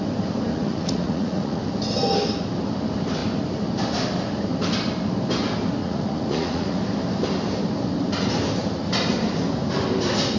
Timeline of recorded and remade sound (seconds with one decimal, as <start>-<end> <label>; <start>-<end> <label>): 0.0-0.5 recorded; 0.5-1.6 remade; 1.6-5.8 recorded; 5.8-6.8 remade; 6.8-10.4 recorded